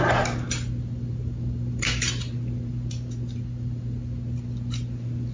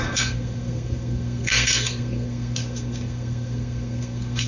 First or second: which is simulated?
second